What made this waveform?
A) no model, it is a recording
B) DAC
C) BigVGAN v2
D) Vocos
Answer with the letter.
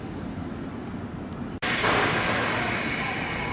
A